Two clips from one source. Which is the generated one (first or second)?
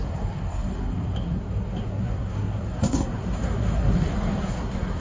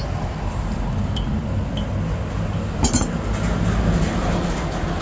first